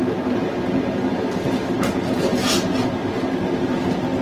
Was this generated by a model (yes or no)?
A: no